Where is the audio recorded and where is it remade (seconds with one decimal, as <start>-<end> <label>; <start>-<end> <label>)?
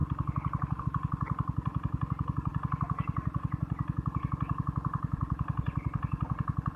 0.0-6.8 recorded